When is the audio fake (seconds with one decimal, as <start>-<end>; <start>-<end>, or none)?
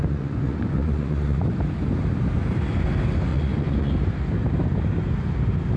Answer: 0.0-1.5; 3.3-3.9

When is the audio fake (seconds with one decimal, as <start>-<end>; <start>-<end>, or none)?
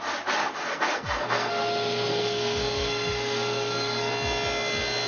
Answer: 0.4-1.5; 2.1-4.1